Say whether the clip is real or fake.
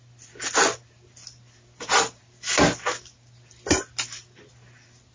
real